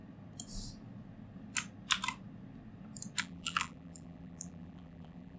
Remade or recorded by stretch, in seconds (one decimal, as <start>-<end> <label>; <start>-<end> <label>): 0.0-3.2 recorded; 3.2-5.4 remade

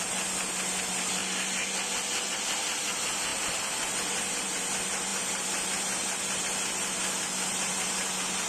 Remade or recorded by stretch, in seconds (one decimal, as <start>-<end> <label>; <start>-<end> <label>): 0.0-8.5 recorded

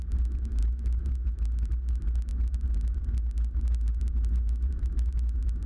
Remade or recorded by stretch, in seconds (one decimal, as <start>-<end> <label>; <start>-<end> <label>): 0.0-5.7 recorded

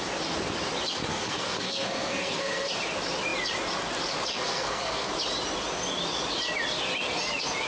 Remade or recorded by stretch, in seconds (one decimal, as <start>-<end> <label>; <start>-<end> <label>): 0.0-1.1 recorded; 1.1-2.7 remade; 2.7-4.3 recorded; 4.3-5.1 remade; 5.1-7.7 recorded

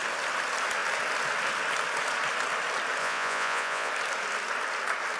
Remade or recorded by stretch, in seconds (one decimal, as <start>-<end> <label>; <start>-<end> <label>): 0.0-3.0 recorded; 3.0-3.9 remade; 3.9-5.2 recorded

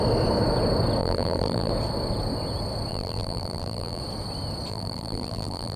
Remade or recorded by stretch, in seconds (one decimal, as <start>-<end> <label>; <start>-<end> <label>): 0.0-1.0 recorded; 1.0-1.7 remade; 1.7-2.9 recorded; 2.9-4.0 remade; 4.0-4.7 recorded; 4.7-5.8 remade